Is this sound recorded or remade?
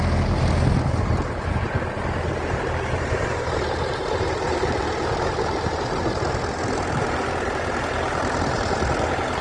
recorded